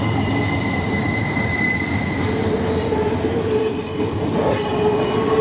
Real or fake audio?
fake